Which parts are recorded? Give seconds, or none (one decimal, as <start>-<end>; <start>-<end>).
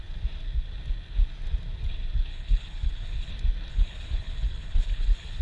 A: 0.0-2.3; 3.3-3.7